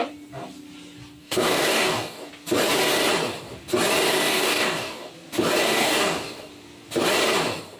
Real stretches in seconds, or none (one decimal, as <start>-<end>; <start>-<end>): 0.0-1.2; 2.3-4.1; 5.1-5.8; 6.5-7.8